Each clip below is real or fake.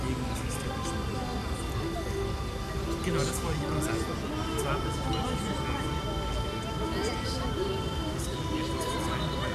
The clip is real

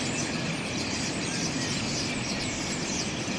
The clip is real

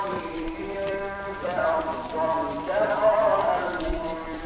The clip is fake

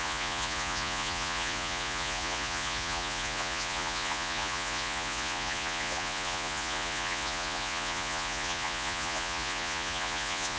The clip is fake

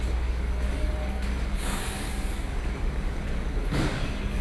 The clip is fake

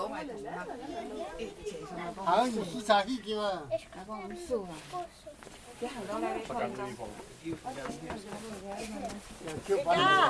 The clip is real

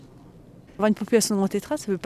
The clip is real